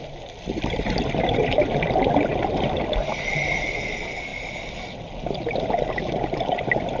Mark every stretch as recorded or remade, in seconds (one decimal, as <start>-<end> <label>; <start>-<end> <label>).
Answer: 0.0-7.0 recorded